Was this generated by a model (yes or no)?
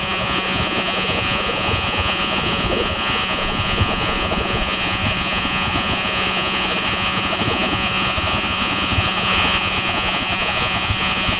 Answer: yes